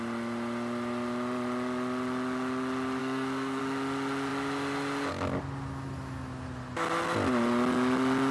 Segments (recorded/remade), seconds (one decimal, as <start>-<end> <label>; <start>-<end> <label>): 0.0-3.0 recorded; 3.0-3.6 remade; 3.6-8.3 recorded